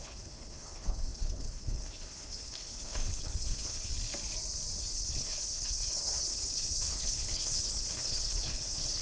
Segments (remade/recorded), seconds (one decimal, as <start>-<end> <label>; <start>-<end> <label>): 0.0-3.9 remade; 3.9-4.8 recorded; 4.8-9.0 remade